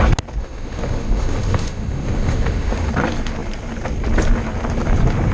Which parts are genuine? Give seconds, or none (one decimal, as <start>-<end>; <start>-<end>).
0.0-0.4; 2.9-5.3